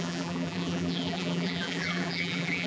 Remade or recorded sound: remade